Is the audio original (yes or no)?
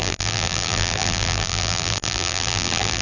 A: no